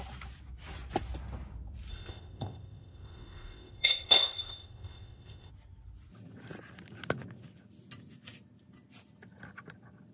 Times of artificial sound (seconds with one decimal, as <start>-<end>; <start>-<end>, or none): 1.9-5.5